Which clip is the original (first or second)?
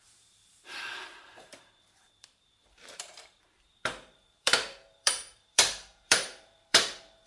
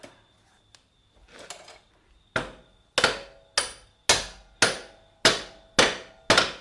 second